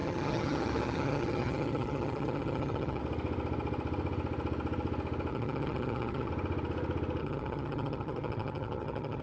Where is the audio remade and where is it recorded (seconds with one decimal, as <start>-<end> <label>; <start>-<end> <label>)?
0.0-3.0 remade; 3.0-5.3 recorded; 5.3-6.3 remade; 6.3-7.2 recorded; 7.2-9.2 remade